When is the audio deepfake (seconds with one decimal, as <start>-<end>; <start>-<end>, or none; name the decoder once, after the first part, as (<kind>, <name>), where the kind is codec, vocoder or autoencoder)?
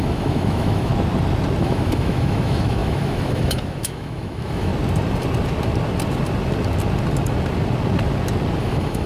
0.0-0.9 (autoencoder, DAC-VAE); 1.6-4.7; 8.6-9.1